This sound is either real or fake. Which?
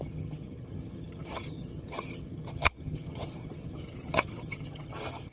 fake